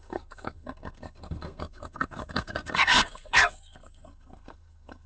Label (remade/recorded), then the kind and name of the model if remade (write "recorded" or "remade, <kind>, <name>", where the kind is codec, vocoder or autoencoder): remade, codec, SNAC